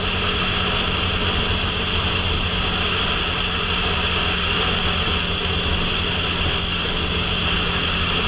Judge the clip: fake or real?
real